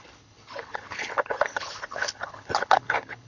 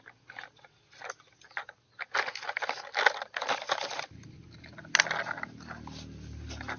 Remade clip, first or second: first